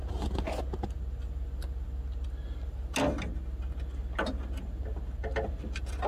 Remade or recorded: recorded